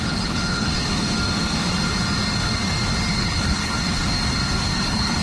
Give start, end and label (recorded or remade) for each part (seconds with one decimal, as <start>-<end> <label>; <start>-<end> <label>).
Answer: 0.0-0.9 remade; 0.9-3.1 recorded; 3.1-4.0 remade; 4.0-4.8 recorded; 4.8-5.2 remade